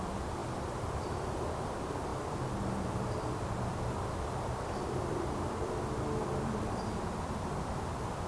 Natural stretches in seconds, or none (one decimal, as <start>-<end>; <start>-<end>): 0.0-0.4; 1.5-2.1; 5.7-6.2; 7.0-8.3